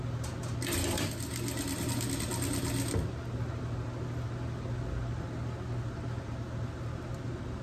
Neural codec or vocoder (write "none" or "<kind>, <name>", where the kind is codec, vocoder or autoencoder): none